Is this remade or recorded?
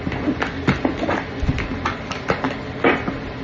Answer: recorded